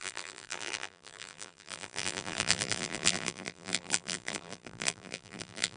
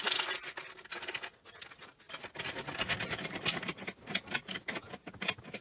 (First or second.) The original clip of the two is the second